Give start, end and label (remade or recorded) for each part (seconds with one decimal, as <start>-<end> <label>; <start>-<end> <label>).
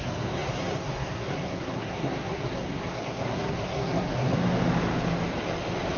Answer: 0.0-4.4 remade; 4.4-6.0 recorded